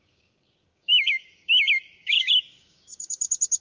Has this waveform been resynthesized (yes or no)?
yes